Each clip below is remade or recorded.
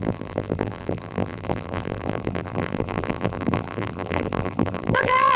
remade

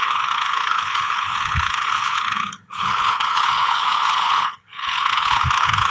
remade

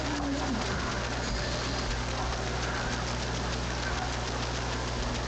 recorded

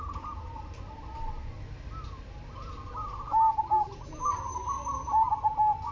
recorded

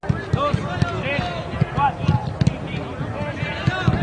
recorded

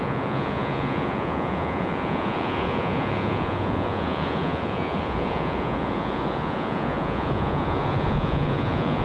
remade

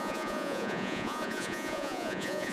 remade